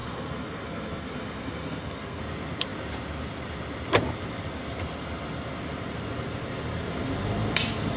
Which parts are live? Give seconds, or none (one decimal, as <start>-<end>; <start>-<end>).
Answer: 2.2-8.0